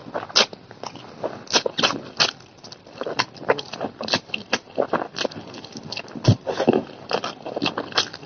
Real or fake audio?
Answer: real